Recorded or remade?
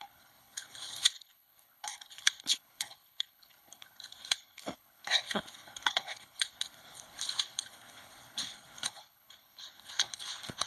remade